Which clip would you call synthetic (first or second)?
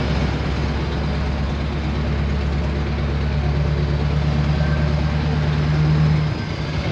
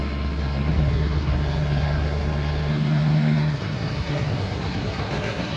second